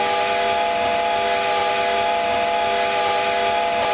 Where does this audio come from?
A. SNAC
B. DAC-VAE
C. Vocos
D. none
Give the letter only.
D